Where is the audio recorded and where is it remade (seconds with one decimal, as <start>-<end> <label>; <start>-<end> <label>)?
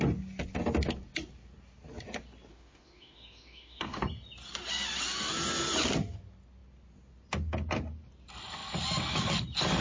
0.0-2.5 recorded; 2.5-4.0 remade; 4.0-9.8 recorded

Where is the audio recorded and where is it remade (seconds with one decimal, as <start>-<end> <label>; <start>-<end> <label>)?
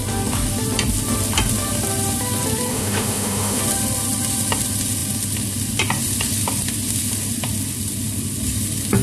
0.0-2.7 recorded; 2.7-3.6 remade; 3.6-9.0 recorded